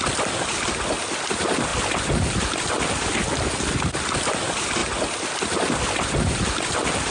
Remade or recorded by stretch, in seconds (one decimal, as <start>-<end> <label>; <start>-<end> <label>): 0.0-7.1 recorded